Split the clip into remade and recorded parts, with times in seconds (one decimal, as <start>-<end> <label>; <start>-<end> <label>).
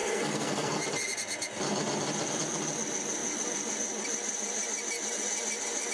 0.0-0.8 remade; 0.8-5.9 recorded